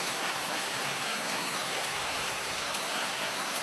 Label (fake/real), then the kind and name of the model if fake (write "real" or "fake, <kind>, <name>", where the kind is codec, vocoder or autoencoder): fake, codec, SNAC